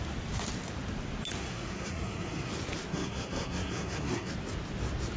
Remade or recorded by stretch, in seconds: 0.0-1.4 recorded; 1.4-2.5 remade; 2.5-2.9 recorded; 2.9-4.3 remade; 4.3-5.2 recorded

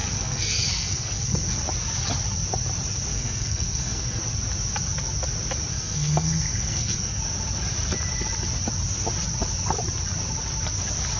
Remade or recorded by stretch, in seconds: 0.0-1.6 remade; 1.6-3.1 recorded; 3.1-4.2 remade; 4.2-5.7 recorded; 5.7-7.2 remade; 7.2-11.2 recorded

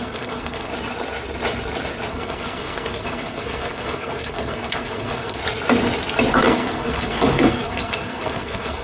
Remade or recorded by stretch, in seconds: 0.0-0.7 remade; 0.7-2.1 recorded; 2.1-5.4 remade; 5.4-6.3 recorded; 6.3-8.8 remade

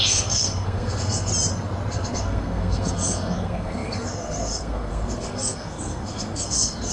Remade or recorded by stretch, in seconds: 0.0-1.3 remade; 1.3-1.9 recorded; 1.9-6.9 remade